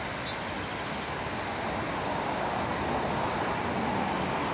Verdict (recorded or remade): recorded